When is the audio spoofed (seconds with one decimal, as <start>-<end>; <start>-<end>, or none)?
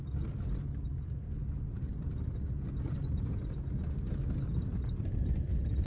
none